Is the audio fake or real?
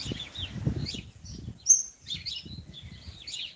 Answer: real